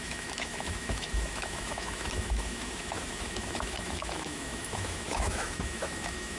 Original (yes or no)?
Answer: no